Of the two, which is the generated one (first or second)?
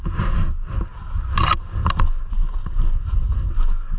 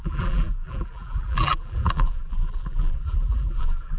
second